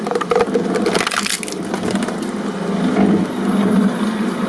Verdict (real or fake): real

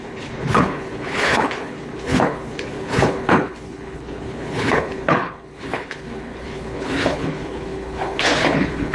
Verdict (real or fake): fake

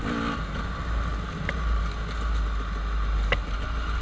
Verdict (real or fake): real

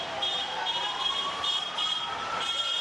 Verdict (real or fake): fake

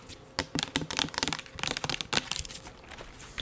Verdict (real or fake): real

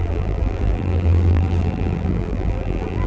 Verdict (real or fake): fake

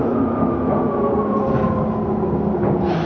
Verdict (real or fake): real